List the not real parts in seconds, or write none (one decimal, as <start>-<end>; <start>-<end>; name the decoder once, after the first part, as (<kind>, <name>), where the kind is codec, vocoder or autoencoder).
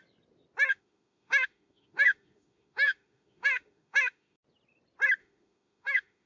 0.7-4.4 (autoencoder, DAC-VAE); 5.2-6.3